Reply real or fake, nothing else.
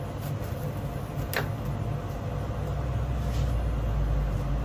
real